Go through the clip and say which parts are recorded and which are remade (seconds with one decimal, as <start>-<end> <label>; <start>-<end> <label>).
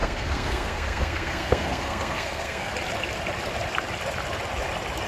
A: 0.0-2.7 remade; 2.7-5.1 recorded